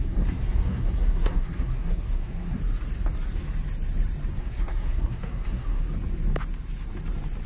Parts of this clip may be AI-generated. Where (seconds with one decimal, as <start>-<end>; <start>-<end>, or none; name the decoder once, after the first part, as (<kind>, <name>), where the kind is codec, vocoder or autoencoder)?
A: 0.0-2.6 (codec, SNAC); 4.4-5.8